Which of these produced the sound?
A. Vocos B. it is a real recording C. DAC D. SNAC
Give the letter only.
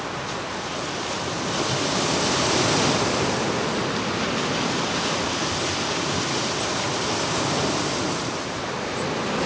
B